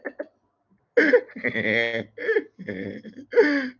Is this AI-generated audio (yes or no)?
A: no